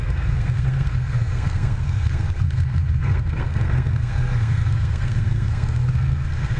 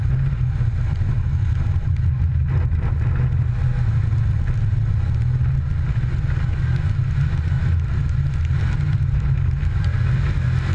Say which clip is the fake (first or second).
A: first